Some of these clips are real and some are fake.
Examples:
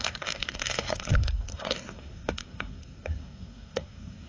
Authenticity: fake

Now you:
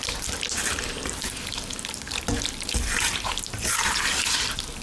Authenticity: real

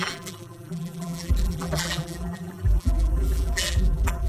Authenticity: fake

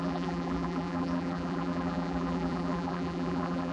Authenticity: fake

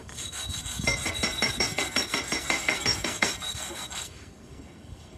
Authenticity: fake